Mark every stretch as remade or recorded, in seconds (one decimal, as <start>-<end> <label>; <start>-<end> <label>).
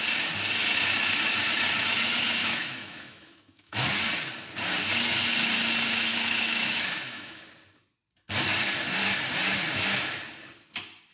0.0-2.4 recorded; 2.4-3.9 remade; 3.9-6.1 recorded; 6.1-7.5 remade; 7.5-11.1 recorded